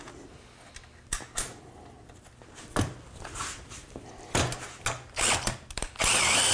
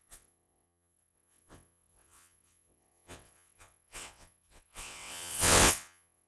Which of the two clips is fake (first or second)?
second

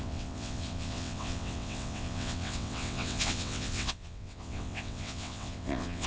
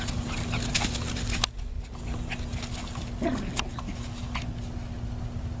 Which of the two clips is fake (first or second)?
first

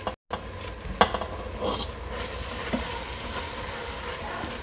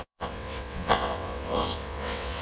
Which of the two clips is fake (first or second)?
second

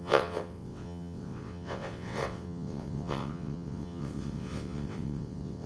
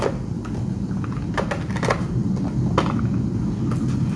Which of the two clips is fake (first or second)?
first